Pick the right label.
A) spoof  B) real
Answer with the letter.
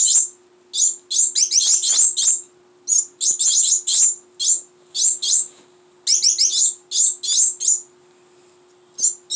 B